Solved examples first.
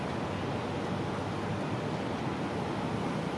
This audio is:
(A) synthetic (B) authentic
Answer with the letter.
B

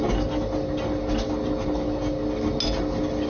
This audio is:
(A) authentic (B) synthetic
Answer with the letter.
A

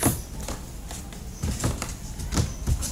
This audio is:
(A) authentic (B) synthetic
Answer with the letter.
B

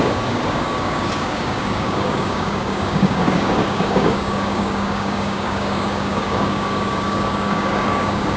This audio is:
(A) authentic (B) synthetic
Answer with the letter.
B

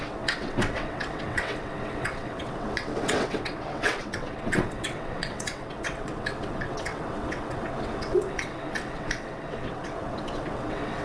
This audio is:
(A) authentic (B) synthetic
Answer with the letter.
B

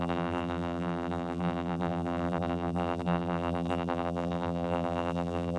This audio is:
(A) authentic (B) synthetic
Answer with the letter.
B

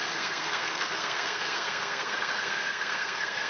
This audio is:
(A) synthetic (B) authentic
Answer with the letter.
A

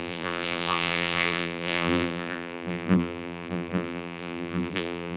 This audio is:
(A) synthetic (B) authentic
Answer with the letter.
A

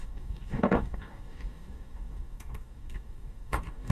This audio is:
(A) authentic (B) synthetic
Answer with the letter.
B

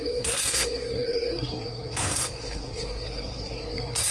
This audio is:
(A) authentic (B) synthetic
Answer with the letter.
B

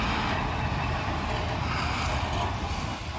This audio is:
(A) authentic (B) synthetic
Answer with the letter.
A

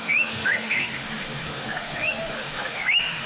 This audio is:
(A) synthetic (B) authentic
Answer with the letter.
A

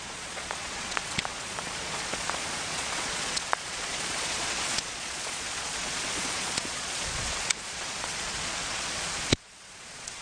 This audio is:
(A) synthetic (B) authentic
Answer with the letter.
A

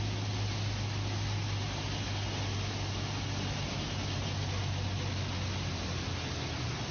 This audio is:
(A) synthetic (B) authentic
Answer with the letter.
B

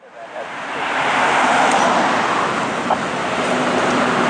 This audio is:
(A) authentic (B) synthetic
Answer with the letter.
A